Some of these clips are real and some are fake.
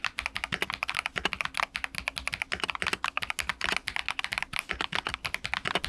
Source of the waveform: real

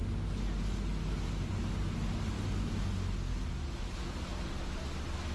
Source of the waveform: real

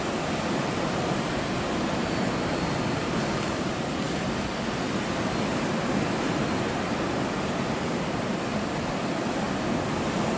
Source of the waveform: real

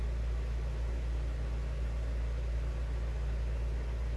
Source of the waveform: real